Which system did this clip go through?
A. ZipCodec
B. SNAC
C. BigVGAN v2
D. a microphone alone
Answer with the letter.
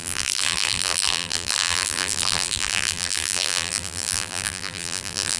C